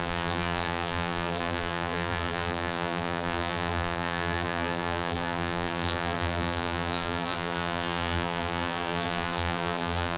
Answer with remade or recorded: remade